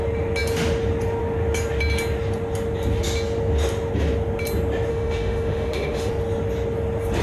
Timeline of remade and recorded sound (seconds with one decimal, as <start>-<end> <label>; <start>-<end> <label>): 0.0-4.9 recorded; 4.9-6.1 remade; 6.1-7.2 recorded